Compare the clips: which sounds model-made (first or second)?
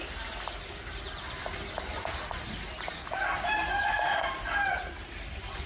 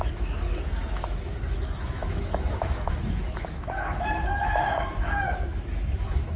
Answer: second